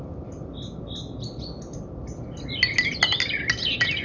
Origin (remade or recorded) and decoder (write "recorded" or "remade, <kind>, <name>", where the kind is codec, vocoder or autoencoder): recorded